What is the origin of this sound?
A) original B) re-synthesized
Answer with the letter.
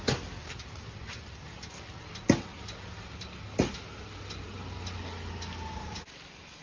A